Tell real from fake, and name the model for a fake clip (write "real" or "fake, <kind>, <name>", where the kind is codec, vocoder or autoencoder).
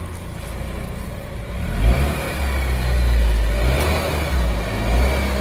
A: real